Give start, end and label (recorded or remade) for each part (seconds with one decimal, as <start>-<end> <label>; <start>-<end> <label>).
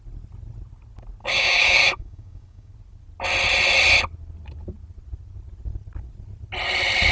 0.0-1.2 recorded; 1.2-2.7 remade; 2.7-7.1 recorded